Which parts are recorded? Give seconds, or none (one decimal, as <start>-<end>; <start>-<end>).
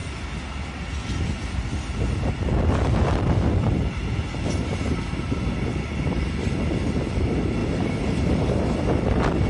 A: 0.0-7.6; 8.4-9.5